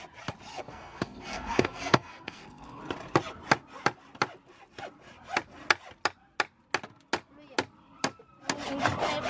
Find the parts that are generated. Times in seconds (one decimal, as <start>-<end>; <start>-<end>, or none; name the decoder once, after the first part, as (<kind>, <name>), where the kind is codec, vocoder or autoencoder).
0.5-2.8 (codec, SNAC)